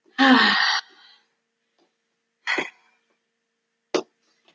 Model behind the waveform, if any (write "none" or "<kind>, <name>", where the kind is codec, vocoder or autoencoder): none